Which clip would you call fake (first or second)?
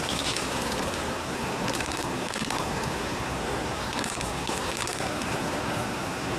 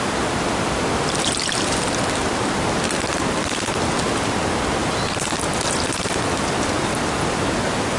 first